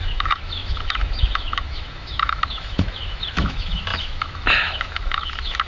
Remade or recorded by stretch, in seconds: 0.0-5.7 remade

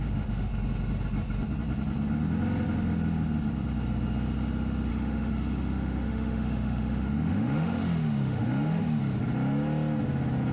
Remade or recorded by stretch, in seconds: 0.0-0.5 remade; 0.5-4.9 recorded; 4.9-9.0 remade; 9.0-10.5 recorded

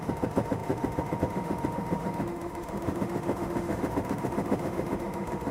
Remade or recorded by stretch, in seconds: 0.0-5.5 remade

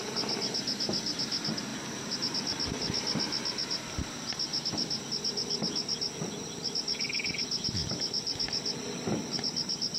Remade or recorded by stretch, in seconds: 0.0-10.0 recorded

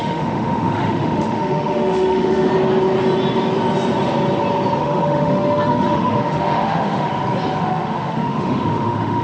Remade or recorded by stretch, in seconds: 0.0-2.5 remade; 2.5-4.8 recorded; 4.8-7.1 remade; 7.1-7.6 recorded; 7.6-9.2 remade

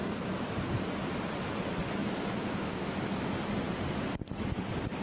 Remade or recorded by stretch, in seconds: 0.0-0.7 remade; 0.7-2.0 recorded; 2.0-3.4 remade; 3.4-5.0 recorded

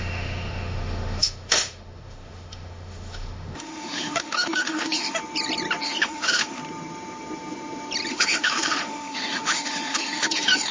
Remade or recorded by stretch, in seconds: 0.0-5.2 remade; 5.2-5.8 recorded; 5.8-6.6 remade; 6.6-8.1 recorded; 8.1-10.7 remade

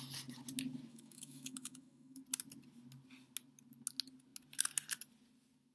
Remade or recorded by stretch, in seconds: 0.0-0.9 recorded; 0.9-2.2 remade; 2.2-5.7 recorded